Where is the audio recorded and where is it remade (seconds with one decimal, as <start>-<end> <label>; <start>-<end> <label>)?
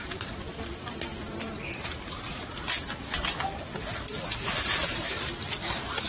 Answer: 0.0-1.1 recorded; 1.1-1.7 remade; 1.7-4.1 recorded; 4.1-4.8 remade; 4.8-6.1 recorded